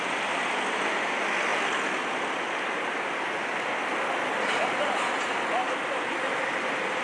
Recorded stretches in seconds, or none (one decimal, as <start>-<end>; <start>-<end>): 0.0-7.0